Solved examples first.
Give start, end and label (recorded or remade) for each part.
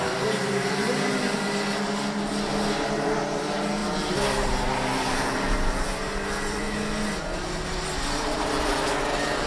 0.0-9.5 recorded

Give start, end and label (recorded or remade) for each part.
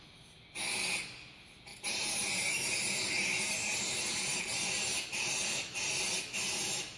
0.0-1.7 recorded; 1.7-5.9 remade; 5.9-7.0 recorded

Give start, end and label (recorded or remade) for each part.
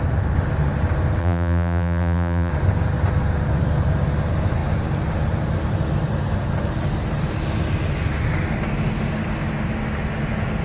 0.0-1.2 recorded; 1.2-2.5 remade; 2.5-10.6 recorded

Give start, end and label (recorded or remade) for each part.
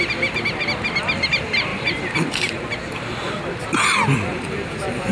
0.0-1.7 recorded; 1.7-2.6 remade; 2.6-4.3 recorded; 4.3-5.1 remade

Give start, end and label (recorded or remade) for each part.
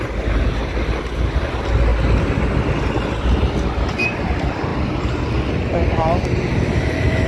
0.0-0.6 recorded; 0.6-1.5 remade; 1.5-7.3 recorded